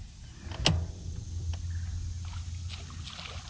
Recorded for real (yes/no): yes